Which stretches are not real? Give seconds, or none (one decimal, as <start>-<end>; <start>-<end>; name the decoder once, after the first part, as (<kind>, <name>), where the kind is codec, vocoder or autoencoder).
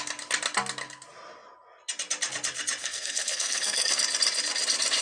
2.8-4.0 (codec, SNAC)